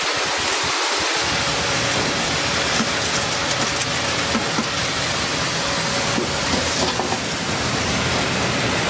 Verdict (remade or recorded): recorded